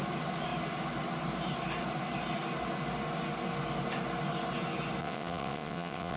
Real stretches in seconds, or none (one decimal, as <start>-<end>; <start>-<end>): 0.0-5.0